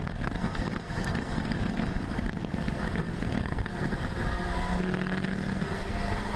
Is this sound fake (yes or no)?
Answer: yes